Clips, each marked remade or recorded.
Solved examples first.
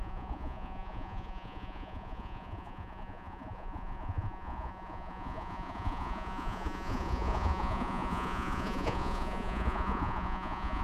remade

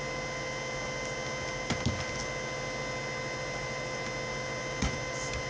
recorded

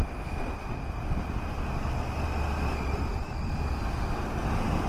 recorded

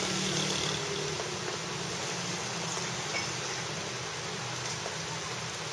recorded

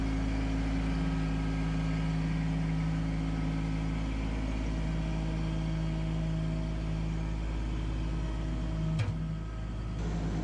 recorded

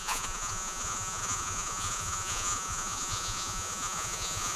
remade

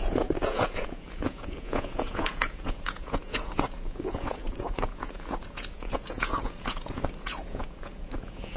remade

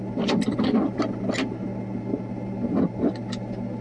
recorded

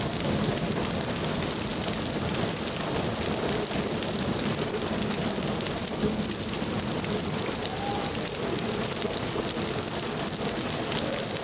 recorded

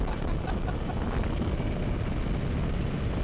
recorded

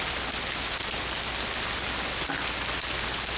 recorded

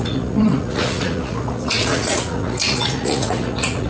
remade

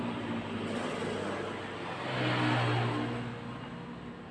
recorded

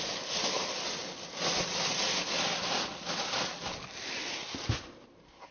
recorded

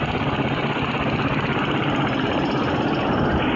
recorded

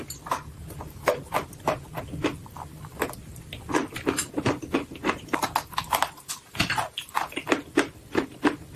recorded